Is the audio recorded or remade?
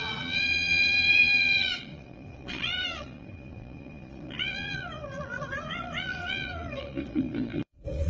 remade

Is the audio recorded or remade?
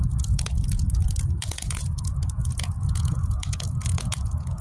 remade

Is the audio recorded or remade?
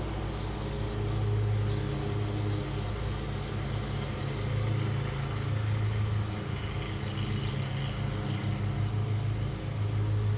recorded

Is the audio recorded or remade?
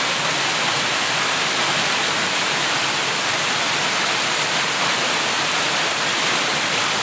recorded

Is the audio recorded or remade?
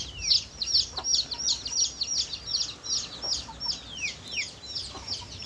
recorded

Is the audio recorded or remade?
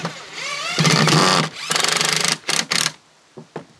recorded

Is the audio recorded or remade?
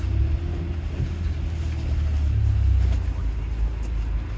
recorded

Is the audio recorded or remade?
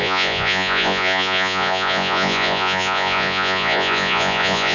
remade